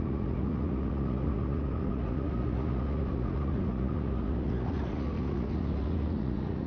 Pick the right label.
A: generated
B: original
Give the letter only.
A